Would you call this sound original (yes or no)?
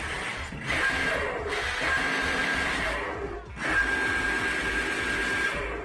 yes